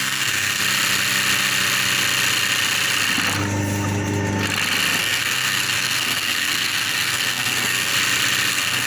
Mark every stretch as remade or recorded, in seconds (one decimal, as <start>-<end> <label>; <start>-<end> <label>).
0.0-0.6 remade; 0.6-5.0 recorded; 5.0-7.9 remade; 7.9-8.5 recorded; 8.5-8.9 remade